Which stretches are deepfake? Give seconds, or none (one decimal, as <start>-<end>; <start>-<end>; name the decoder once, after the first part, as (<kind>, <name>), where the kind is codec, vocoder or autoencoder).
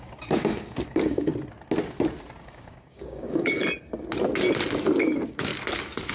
0.0-1.3 (codec, DAC); 2.4-3.6; 5.0-5.5